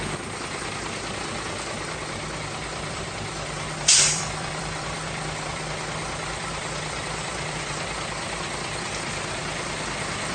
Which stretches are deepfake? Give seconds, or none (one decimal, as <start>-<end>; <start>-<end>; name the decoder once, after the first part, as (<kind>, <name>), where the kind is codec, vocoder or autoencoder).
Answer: 2.6-7.8 (vocoder, BigVGAN v2)